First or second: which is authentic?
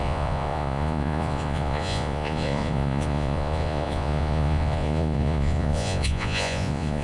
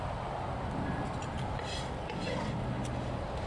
second